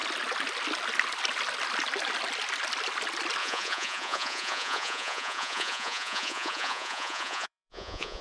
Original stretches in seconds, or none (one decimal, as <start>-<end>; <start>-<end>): 0.0-3.4